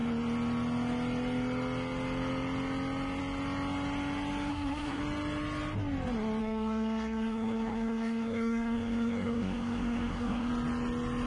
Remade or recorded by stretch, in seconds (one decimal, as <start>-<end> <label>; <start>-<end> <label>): 0.0-4.5 recorded; 4.5-5.0 remade; 5.0-6.4 recorded; 6.4-10.5 remade; 10.5-11.3 recorded